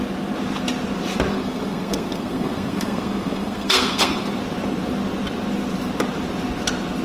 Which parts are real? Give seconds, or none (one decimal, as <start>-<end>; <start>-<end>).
0.0-1.3; 4.4-7.0